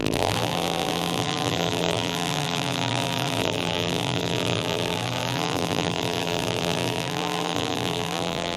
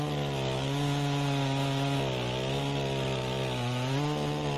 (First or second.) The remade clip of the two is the first